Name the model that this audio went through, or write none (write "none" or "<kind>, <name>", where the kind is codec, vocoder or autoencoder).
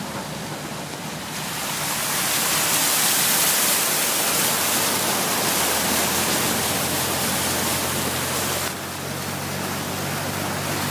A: none